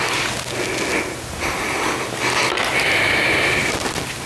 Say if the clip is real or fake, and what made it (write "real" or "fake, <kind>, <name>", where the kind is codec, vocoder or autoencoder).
real